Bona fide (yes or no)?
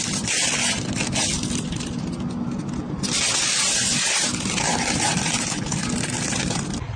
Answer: yes